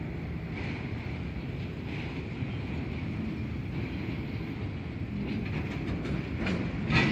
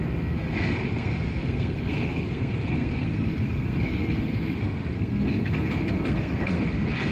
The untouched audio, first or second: first